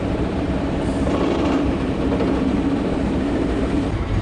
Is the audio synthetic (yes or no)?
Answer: yes